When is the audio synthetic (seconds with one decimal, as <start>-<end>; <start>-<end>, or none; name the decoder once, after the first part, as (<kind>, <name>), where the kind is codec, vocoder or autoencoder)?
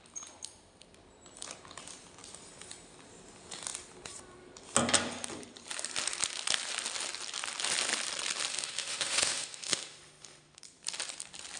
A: 8.5-10.6 (autoencoder, DAC-VAE)